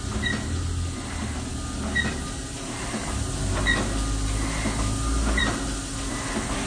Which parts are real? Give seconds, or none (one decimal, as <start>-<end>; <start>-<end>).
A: 0.0-6.7